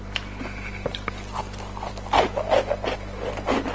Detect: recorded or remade recorded